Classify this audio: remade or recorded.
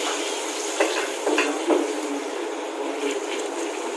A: recorded